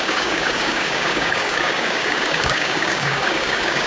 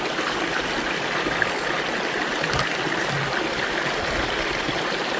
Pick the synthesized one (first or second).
first